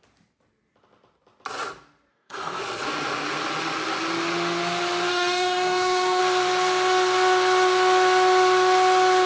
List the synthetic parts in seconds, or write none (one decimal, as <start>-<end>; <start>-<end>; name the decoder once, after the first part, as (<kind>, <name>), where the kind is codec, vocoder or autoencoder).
2.1-2.6 (codec, DAC); 5.1-6.2